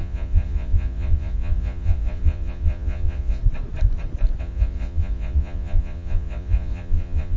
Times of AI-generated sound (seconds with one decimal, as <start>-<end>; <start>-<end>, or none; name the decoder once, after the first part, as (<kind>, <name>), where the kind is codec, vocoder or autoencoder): 0.0-3.4 (vocoder, Vocos); 4.4-7.4